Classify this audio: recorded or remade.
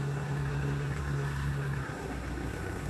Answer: remade